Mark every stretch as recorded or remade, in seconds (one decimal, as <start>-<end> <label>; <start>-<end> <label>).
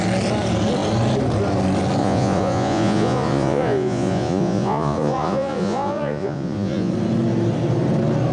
0.0-2.0 recorded; 2.0-6.9 remade; 6.9-8.3 recorded